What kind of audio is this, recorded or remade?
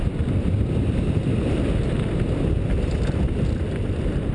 recorded